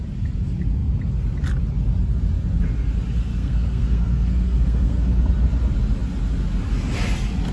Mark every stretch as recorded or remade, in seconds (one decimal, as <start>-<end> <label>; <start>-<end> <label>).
0.0-3.3 recorded; 3.3-5.2 remade; 5.2-7.5 recorded